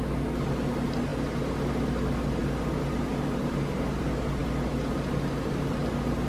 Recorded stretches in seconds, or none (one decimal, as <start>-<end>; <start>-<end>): none